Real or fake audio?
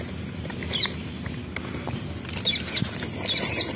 real